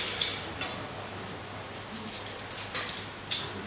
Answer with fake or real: real